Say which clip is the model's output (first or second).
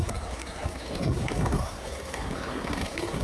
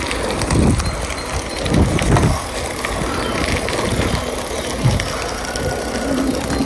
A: first